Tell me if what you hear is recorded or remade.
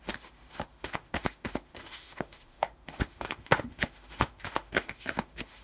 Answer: remade